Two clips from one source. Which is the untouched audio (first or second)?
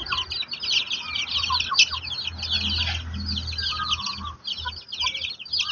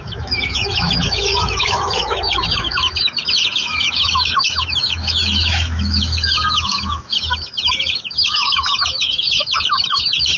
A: first